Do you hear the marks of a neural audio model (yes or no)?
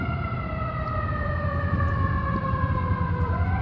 yes